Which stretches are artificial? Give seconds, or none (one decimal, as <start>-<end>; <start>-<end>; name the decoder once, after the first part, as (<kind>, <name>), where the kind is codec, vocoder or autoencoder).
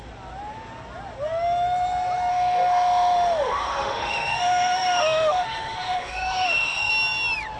2.3-6.9 (autoencoder, DAC-VAE)